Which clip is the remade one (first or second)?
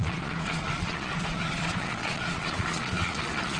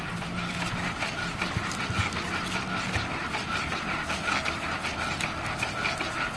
first